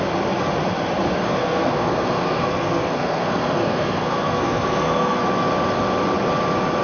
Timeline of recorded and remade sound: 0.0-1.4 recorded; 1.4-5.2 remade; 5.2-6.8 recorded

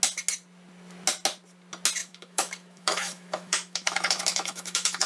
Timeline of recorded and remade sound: 0.0-2.0 recorded; 2.0-5.1 remade

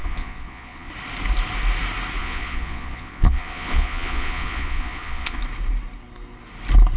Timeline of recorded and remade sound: 0.0-0.9 remade; 0.9-2.2 recorded; 2.2-5.4 remade; 5.4-7.0 recorded

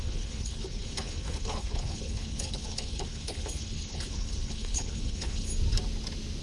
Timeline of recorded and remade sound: 0.0-5.5 remade; 5.5-6.4 recorded

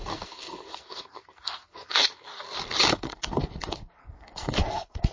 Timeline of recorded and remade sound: 0.0-2.3 remade; 2.3-2.9 recorded; 2.9-5.1 remade

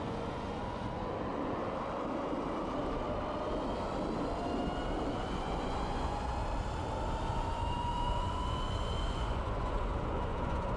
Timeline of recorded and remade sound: 0.0-1.6 remade; 1.6-5.1 recorded; 5.1-6.4 remade; 6.4-7.3 recorded; 7.3-10.8 remade

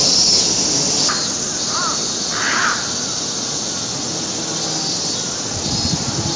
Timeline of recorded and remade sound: 0.0-6.4 recorded